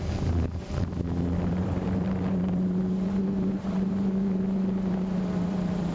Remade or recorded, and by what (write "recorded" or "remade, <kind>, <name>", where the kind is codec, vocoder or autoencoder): remade, vocoder, BigVGAN v2